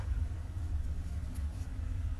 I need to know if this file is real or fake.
fake